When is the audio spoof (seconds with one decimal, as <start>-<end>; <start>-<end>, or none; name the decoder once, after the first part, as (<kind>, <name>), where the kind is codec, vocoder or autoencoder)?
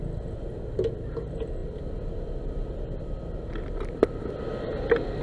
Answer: none